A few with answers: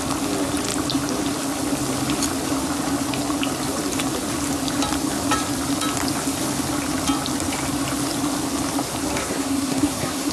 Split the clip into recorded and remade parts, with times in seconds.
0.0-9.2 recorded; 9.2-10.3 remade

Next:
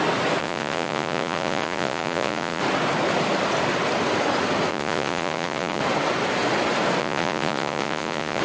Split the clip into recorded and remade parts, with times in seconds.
0.0-0.4 recorded; 0.4-2.6 remade; 2.6-4.7 recorded; 4.7-5.8 remade; 5.8-7.0 recorded; 7.0-8.4 remade

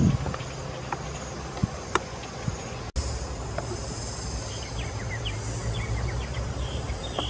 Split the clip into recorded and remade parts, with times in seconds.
0.0-1.6 recorded; 1.6-2.8 remade; 2.8-7.3 recorded

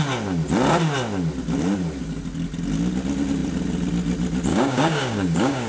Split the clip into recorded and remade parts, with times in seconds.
0.0-4.5 recorded; 4.5-5.7 remade

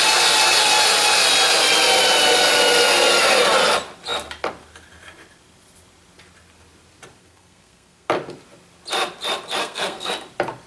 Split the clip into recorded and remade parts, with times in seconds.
0.0-7.2 recorded; 7.2-8.1 remade; 8.1-9.6 recorded; 9.6-10.1 remade; 10.1-10.7 recorded

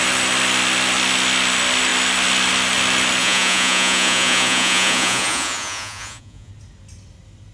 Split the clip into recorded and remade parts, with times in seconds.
0.0-3.2 recorded; 3.2-6.5 remade; 6.5-7.5 recorded